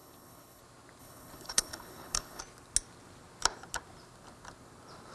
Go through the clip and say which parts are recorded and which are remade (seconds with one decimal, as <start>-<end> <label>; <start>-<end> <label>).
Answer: 0.0-0.6 remade; 0.6-1.0 recorded; 1.0-2.4 remade; 2.4-5.1 recorded